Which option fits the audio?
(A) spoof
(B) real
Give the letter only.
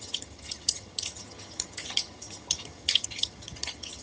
A